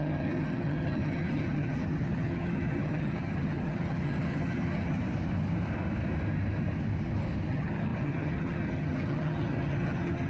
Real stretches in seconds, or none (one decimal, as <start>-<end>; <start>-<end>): 5.0-7.5